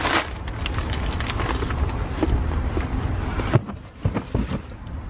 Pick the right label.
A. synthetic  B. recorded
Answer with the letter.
B